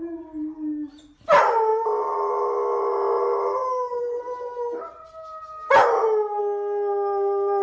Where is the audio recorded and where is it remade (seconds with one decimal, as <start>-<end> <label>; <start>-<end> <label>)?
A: 0.0-7.6 recorded

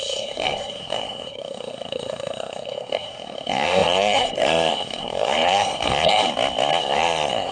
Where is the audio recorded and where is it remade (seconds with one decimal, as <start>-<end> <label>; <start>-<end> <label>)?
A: 0.0-6.2 remade; 6.2-6.8 recorded; 6.8-7.5 remade

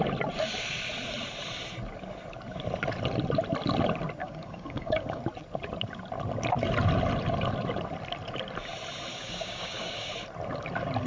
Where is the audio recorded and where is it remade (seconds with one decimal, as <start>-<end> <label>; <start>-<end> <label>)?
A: 0.0-4.2 recorded; 4.2-5.2 remade; 5.2-9.1 recorded; 9.1-10.1 remade; 10.1-11.1 recorded